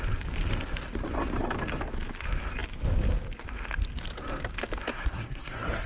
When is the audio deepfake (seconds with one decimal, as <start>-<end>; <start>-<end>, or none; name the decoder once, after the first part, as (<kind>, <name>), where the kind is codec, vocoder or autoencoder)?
4.9-5.9 (codec, SNAC)